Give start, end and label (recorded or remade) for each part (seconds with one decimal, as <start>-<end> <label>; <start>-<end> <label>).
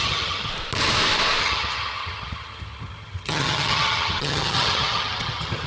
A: 0.0-0.5 remade; 0.5-1.4 recorded; 1.4-5.7 remade